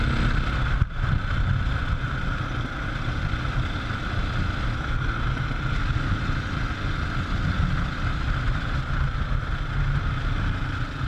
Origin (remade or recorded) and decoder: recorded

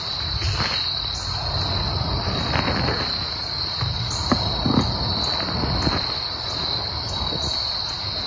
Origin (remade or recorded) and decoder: recorded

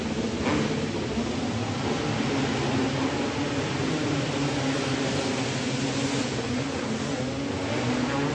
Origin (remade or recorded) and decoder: recorded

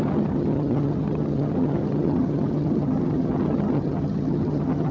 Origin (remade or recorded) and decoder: remade, vocoder, HiFi-GAN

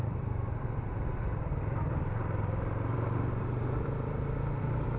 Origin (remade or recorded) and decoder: remade, vocoder, BigVGAN v2